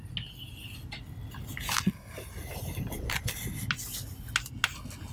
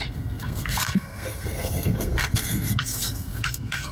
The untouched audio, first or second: first